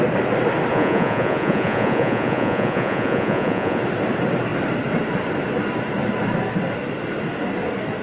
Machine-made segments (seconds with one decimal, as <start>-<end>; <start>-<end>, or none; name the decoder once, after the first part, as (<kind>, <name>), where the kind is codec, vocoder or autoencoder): 0.7-3.8 (vocoder, Vocos)

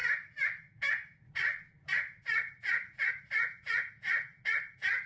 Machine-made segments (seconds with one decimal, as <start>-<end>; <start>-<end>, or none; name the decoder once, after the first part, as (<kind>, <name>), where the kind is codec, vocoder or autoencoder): 0.0-5.1 (vocoder, Vocos)

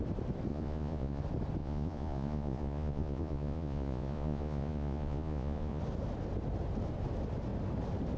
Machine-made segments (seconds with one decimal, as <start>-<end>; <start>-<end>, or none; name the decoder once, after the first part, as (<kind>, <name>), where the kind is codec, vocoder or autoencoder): 0.5-1.2 (vocoder, Vocos); 1.6-5.8

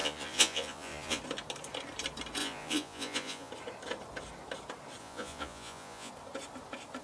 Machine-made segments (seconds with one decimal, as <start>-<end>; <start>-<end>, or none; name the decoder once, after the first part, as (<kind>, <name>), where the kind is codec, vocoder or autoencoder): 0.0-1.2 (vocoder, Vocos); 2.4-3.5; 5.0-6.1